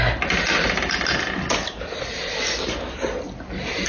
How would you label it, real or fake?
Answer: real